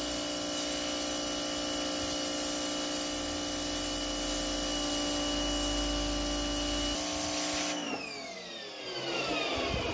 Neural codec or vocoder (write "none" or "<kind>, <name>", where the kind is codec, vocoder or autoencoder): none